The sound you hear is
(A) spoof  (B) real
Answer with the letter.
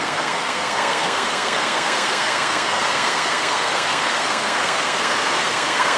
A